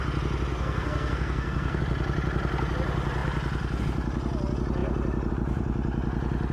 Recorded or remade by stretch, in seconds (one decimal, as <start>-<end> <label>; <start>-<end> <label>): 0.0-0.5 recorded; 0.5-1.8 remade; 1.8-6.5 recorded